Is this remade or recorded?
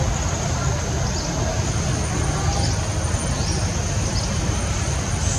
recorded